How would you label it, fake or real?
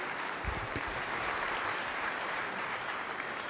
fake